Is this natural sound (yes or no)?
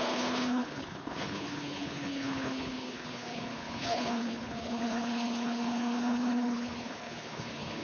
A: no